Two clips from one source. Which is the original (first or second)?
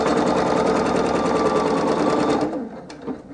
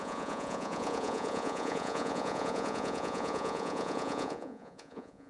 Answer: first